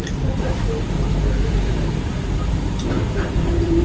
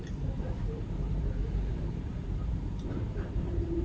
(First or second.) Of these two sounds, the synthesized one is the second